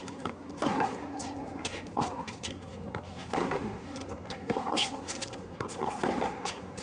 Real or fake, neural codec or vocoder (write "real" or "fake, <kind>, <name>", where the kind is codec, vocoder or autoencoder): fake, codec, SNAC